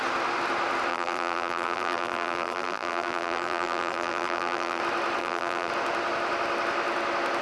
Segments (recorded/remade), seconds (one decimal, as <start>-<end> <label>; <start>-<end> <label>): 0.0-0.9 recorded; 0.9-4.8 remade; 4.8-5.2 recorded; 5.2-5.7 remade; 5.7-7.4 recorded